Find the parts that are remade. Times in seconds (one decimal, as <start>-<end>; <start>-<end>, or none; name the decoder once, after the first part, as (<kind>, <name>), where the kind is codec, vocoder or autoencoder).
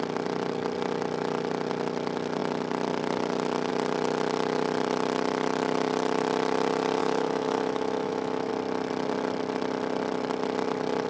7.0-8.5 (autoencoder, DAC-VAE)